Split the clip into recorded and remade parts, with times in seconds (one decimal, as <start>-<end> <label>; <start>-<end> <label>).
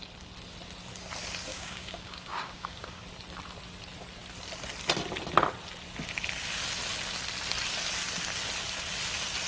0.0-1.5 recorded; 1.5-3.0 remade; 3.0-9.5 recorded